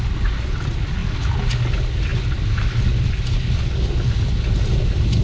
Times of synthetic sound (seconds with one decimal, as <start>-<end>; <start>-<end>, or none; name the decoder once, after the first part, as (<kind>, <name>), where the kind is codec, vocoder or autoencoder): none